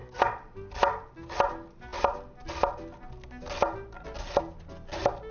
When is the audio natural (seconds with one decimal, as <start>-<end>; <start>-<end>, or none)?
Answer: 0.0-5.3